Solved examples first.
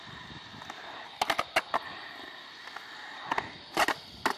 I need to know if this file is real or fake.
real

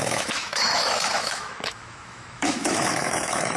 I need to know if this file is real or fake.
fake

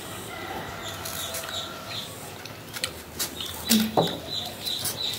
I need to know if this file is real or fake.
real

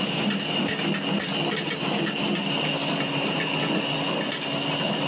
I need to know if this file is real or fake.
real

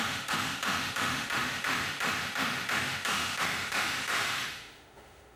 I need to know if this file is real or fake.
fake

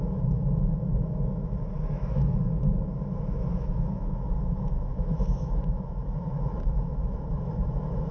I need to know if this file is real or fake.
fake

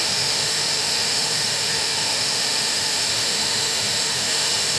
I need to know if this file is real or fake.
fake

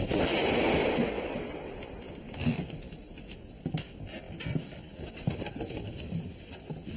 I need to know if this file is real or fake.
real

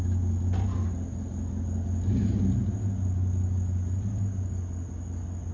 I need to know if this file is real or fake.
real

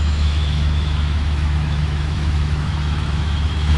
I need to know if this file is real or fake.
fake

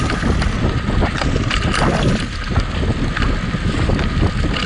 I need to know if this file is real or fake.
real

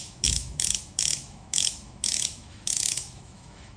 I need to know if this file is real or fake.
fake